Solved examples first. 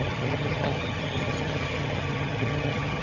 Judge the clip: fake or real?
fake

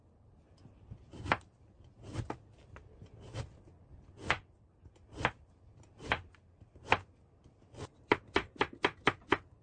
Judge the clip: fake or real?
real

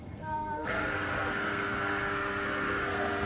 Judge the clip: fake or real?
fake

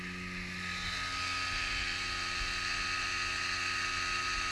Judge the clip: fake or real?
real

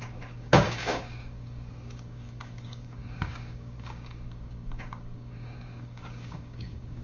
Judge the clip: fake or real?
fake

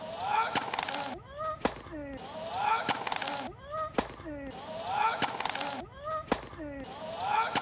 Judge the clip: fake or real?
real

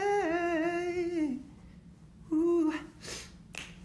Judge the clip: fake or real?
real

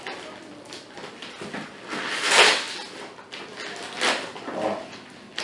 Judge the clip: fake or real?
real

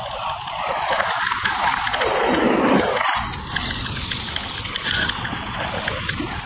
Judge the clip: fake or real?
real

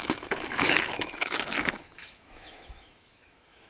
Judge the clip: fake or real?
fake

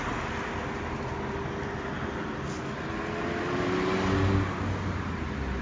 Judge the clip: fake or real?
real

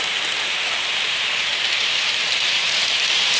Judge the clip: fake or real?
fake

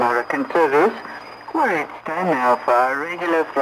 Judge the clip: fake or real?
real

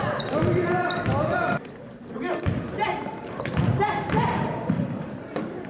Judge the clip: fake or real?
fake